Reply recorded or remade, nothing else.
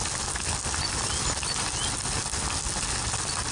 recorded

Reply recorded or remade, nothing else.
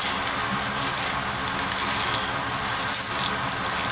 recorded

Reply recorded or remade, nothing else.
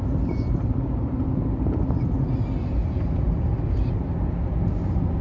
recorded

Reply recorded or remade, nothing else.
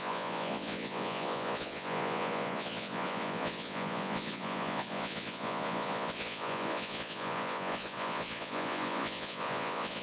remade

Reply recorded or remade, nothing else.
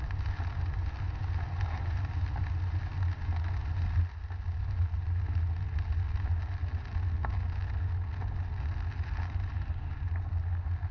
recorded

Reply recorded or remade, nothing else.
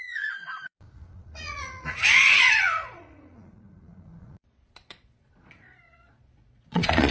remade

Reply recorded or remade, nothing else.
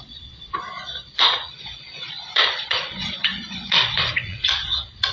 remade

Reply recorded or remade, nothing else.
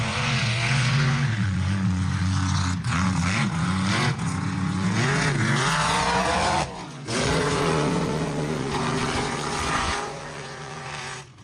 remade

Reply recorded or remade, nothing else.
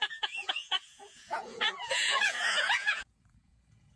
remade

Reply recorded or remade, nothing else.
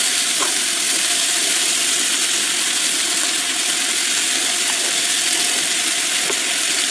recorded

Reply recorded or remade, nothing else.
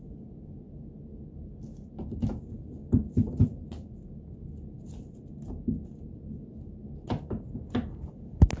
recorded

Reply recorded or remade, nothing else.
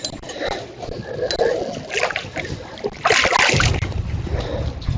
recorded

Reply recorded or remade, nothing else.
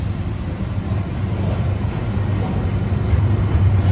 recorded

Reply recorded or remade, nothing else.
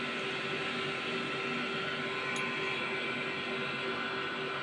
recorded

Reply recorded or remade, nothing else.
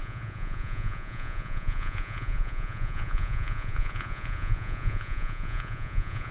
remade